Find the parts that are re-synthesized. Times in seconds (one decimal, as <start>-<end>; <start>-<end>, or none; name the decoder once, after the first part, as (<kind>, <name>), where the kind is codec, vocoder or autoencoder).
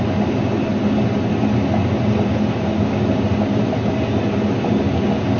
none